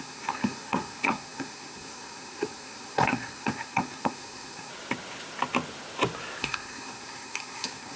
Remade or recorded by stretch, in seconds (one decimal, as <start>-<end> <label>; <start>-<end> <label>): 0.0-4.7 remade; 4.7-6.4 recorded; 6.4-8.0 remade